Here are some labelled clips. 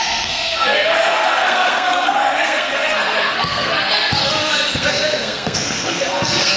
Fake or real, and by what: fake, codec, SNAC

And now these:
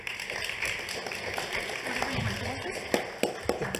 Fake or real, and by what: real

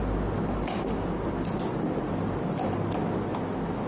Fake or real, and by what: real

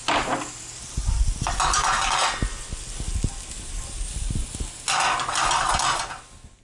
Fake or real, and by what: real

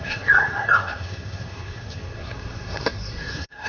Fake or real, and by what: fake, codec, SNAC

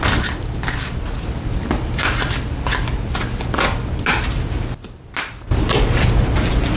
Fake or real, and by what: real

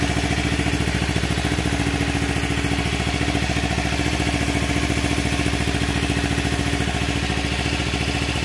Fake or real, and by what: real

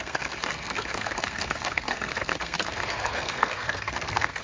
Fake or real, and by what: fake, codec, SNAC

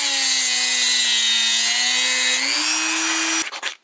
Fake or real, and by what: real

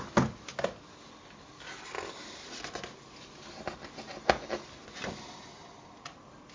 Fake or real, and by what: real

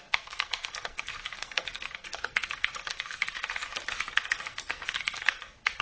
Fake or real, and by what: fake, codec, SNAC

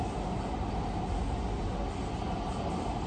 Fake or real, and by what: real